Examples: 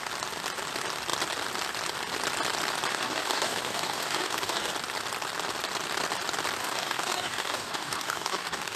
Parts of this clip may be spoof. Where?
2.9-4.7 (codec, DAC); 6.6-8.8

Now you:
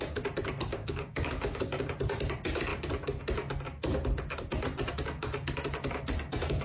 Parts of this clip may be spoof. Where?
0.7-1.8 (codec, DAC)

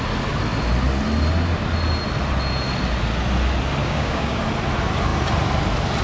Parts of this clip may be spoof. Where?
3.8-4.4 (codec, DAC)

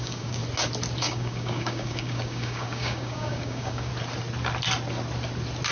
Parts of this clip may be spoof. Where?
0.0-0.4 (codec, DAC); 1.0-3.9

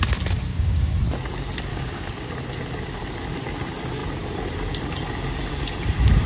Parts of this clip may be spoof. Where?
0.5-1.0 (codec, DAC); 1.7-2.3